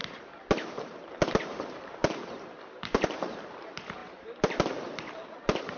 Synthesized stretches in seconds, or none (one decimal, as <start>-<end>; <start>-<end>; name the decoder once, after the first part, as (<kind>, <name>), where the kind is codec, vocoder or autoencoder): 0.0-4.0 (vocoder, BigVGAN v2)